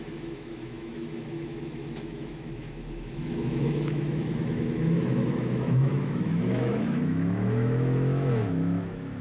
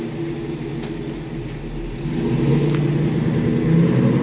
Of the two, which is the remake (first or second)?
first